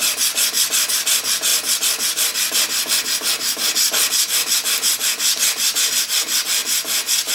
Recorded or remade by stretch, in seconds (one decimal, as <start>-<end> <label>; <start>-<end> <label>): 0.0-7.3 recorded